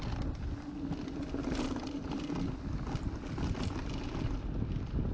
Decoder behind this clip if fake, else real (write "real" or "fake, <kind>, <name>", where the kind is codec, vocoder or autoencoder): real